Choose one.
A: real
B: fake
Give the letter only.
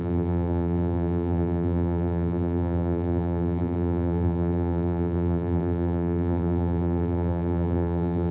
B